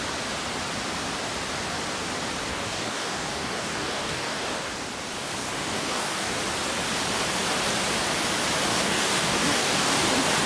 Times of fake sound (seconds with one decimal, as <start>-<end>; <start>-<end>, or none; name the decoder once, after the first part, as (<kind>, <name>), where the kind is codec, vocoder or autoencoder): 2.5-4.7 (codec, DAC); 5.4-6.3; 8.7-10.1